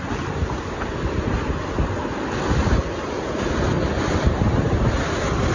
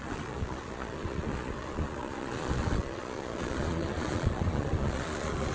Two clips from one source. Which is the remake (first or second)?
second